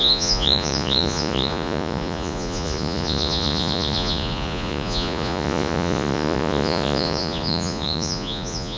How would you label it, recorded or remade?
remade